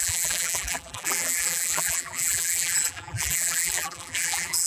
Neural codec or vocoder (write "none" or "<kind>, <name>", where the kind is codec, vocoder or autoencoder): vocoder, BigVGAN v2